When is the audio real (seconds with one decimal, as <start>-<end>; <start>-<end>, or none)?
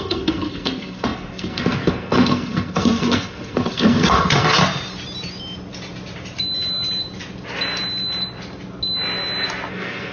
4.6-9.7